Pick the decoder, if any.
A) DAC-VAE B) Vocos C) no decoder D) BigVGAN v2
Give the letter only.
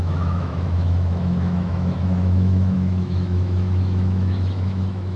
A